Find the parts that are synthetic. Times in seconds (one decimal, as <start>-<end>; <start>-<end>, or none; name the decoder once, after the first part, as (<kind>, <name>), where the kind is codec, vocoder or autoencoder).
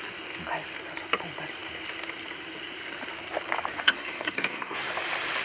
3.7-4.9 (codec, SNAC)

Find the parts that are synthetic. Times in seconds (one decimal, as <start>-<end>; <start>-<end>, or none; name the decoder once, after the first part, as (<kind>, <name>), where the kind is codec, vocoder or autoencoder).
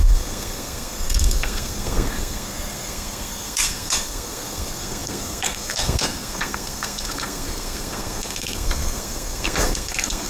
0.0-10.3 (codec, SNAC)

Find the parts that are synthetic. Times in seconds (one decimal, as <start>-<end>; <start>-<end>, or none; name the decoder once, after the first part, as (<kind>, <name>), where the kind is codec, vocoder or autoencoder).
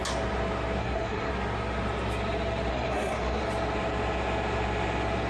0.8-1.3 (codec, SNAC); 2.7-3.4